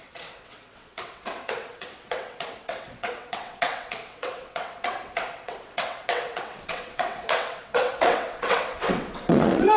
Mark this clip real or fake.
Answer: fake